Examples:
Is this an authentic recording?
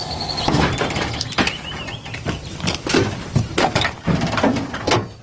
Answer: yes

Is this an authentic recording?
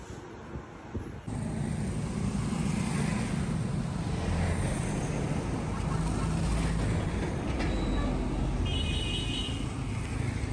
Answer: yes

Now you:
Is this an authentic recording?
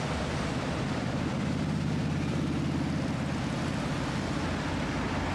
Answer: yes